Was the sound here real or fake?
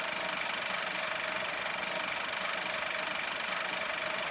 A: real